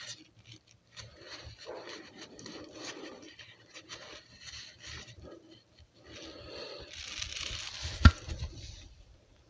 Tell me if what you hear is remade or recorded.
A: remade